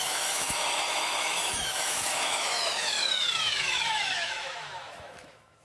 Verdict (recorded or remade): remade